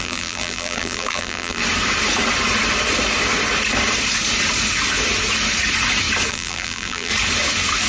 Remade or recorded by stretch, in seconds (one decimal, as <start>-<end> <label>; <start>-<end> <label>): 0.0-1.6 remade; 1.6-6.3 recorded; 6.3-7.1 remade; 7.1-7.9 recorded